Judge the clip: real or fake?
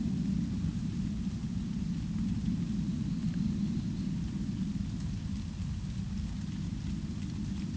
real